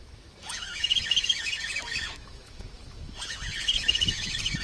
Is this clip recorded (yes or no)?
no